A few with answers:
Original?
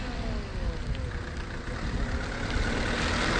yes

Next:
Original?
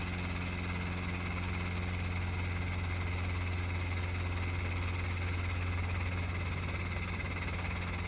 yes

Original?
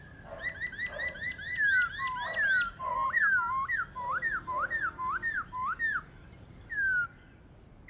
yes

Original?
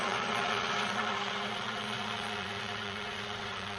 no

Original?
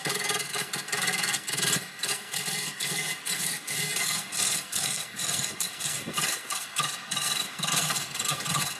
no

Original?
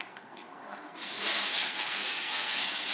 no